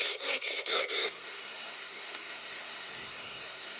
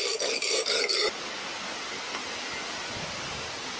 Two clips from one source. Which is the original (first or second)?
second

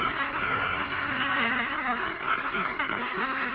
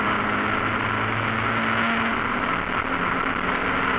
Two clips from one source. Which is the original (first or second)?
second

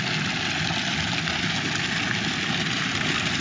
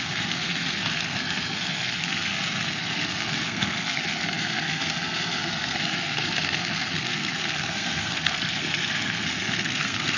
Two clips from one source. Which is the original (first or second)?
first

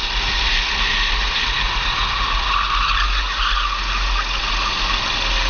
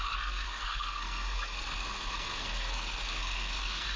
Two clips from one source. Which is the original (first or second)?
first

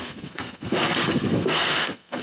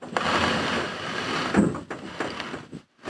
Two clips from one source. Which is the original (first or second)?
second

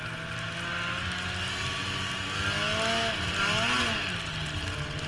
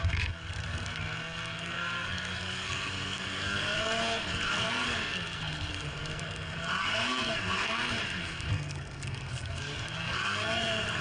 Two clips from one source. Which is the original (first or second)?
first